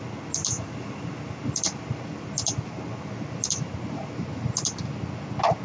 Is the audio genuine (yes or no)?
yes